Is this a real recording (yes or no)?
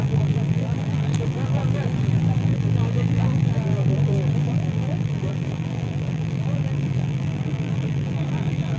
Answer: no